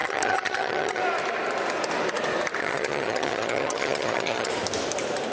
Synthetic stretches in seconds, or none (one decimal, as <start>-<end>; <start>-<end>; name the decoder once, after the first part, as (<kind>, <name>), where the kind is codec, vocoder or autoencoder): 0.0-1.0 (vocoder, HiFi-GAN); 2.6-4.5